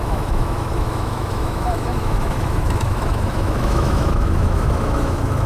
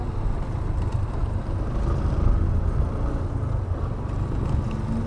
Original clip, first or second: second